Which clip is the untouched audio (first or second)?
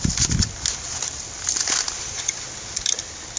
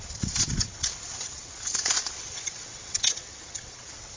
first